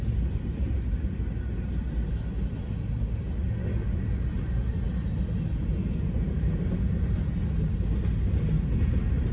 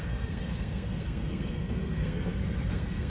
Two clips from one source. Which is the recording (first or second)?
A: first